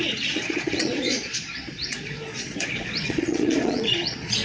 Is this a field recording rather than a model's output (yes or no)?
no